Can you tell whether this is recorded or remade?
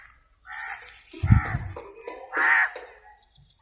recorded